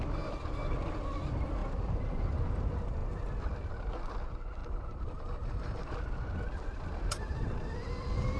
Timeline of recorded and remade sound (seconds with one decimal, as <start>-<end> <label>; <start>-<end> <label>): 0.0-4.6 recorded; 4.6-5.9 remade; 5.9-8.4 recorded